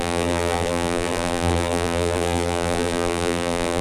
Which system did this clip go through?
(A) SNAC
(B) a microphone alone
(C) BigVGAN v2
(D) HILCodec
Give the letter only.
C